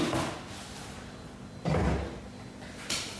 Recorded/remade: recorded